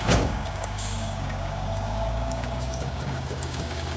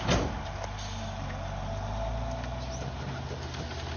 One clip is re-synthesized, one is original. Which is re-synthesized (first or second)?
first